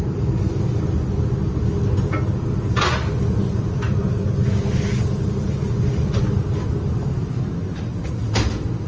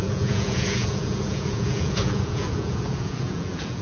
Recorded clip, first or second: first